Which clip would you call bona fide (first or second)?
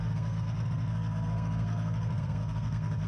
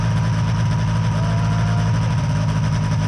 second